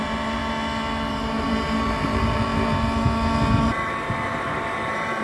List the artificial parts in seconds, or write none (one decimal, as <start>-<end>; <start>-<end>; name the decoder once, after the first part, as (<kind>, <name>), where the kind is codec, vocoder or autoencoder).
0.0-0.4 (vocoder, BigVGAN v2); 1.1-2.5; 3.6-5.2